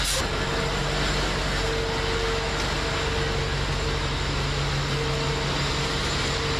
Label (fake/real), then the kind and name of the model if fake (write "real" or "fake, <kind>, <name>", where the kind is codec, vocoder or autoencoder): real